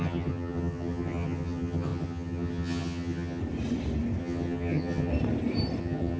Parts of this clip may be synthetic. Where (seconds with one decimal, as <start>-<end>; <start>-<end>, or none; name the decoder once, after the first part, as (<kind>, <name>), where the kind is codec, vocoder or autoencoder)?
0.0-3.4 (vocoder, HiFi-GAN); 4.2-5.1; 5.8-6.2

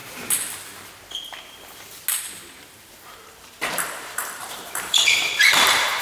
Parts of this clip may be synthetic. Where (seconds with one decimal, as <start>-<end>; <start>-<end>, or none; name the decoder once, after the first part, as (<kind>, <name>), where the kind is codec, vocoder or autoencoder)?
2.9-6.0 (vocoder, BigVGAN v2)

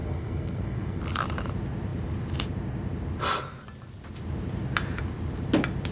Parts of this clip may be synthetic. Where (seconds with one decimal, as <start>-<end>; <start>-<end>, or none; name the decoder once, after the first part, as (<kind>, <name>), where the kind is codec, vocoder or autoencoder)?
0.0-1.0 (codec, SNAC)

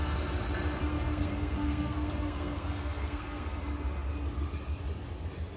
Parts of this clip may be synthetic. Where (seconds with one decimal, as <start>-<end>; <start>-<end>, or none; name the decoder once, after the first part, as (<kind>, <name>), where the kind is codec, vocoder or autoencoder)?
0.8-3.6 (codec, SNAC)